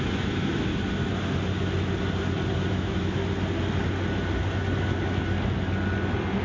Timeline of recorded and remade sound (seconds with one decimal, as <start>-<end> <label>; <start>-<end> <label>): 0.0-0.7 remade; 0.7-2.7 recorded; 2.7-3.2 remade; 3.2-6.4 recorded